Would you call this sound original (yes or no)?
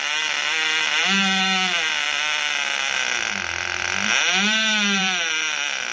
no